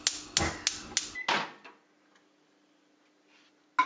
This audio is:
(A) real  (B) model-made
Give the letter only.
A